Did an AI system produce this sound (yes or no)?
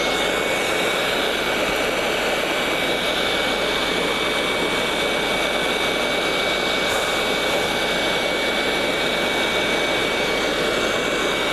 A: no